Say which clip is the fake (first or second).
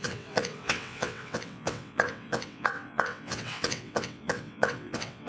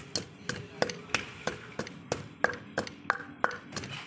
first